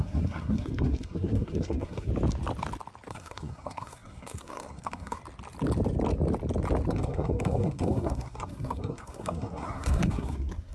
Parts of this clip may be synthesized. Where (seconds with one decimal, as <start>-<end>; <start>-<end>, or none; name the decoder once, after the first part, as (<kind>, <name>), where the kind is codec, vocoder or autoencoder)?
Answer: 0.0-2.1 (codec, SNAC); 3.1-5.2; 6.9-10.7